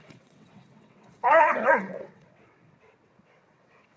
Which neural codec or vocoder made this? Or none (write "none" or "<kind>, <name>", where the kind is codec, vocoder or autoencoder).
vocoder, WaveNeXt